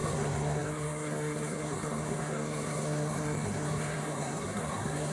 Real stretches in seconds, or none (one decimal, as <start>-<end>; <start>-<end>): none